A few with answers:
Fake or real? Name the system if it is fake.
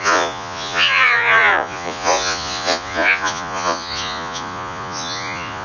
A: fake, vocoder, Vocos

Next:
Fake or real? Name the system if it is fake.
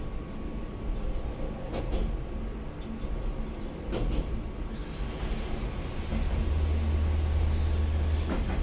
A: real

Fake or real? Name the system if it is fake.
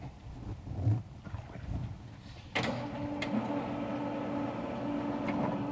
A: real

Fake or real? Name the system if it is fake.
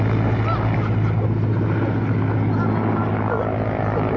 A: real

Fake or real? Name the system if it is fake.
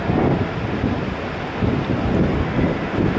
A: real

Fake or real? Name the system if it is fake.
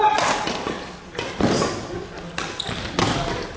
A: real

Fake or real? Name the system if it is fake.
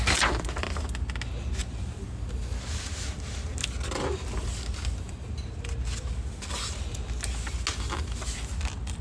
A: real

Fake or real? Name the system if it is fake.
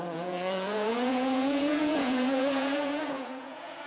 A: fake, vocoder, Vocos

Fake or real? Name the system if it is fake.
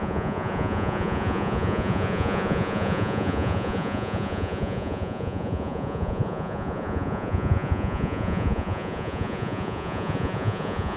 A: fake, vocoder, Vocos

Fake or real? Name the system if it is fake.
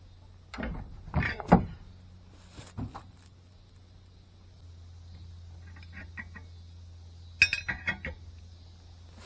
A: real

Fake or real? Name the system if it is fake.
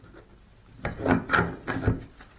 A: real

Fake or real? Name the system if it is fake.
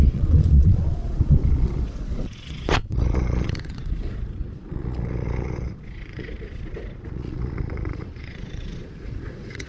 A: fake, vocoder, Vocos